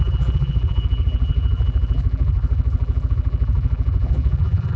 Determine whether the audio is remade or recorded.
remade